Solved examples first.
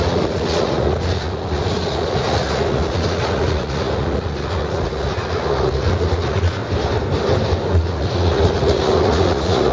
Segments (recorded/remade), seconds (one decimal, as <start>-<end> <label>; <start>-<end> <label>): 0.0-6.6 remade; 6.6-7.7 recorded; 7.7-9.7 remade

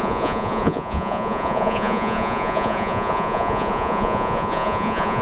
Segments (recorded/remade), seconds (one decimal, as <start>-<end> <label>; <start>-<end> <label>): 0.0-5.2 remade

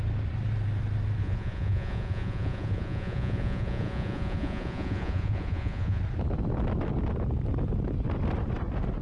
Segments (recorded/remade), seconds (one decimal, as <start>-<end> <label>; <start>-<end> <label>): 0.0-1.2 recorded; 1.2-6.0 remade; 6.0-9.0 recorded